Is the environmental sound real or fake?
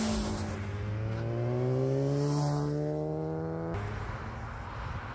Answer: real